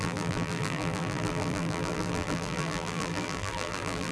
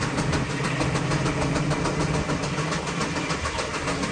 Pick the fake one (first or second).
first